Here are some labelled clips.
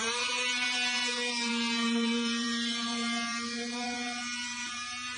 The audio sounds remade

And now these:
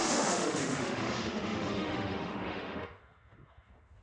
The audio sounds remade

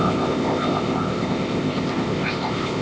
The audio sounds remade